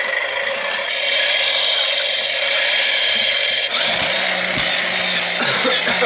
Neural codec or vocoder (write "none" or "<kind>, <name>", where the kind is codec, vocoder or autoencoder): none